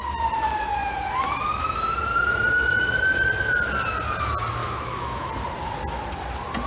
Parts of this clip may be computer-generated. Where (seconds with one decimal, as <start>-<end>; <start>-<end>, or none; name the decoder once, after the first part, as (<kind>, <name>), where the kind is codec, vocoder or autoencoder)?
4.6-5.3 (autoencoder, DAC-VAE)